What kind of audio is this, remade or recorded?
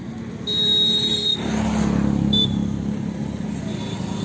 recorded